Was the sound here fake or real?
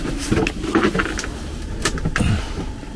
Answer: real